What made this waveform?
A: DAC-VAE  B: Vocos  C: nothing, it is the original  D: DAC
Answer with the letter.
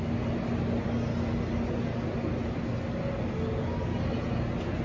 C